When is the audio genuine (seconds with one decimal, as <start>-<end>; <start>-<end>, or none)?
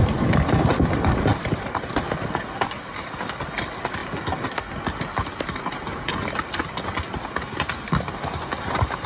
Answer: 0.0-1.3; 2.0-9.1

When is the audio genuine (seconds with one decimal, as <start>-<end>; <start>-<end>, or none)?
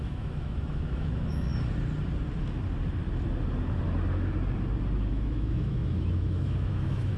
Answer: 1.5-5.1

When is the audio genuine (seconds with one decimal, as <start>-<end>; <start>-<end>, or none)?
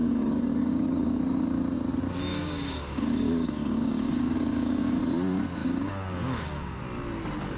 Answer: 1.2-2.3; 5.0-5.6; 6.8-7.6